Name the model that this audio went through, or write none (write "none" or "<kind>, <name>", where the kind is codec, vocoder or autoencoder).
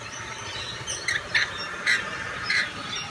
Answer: vocoder, BigVGAN v2